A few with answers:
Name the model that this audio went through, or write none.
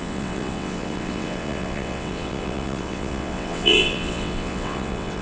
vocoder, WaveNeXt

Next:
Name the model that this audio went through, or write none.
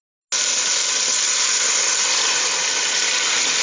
none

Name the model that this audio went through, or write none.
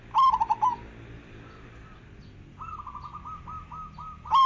none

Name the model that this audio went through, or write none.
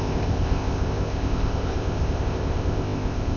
codec, ZipCodec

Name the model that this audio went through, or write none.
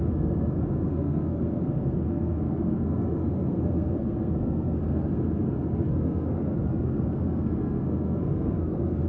codec, SNAC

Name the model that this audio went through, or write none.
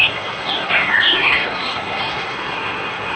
codec, SNAC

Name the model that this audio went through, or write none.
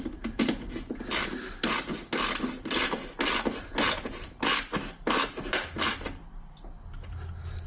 none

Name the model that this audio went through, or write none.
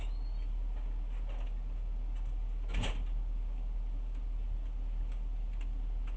none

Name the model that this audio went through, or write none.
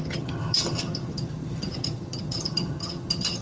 vocoder, HiFi-GAN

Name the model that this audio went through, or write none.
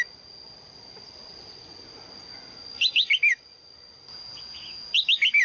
none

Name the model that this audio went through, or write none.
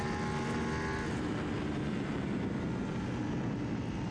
none